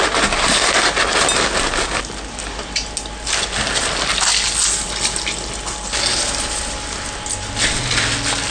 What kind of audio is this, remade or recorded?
recorded